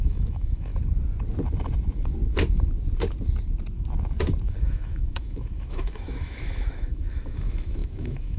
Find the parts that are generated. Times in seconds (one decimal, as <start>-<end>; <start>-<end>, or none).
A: 0.0-0.7; 4.6-8.4